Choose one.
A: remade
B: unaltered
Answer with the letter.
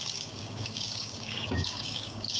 A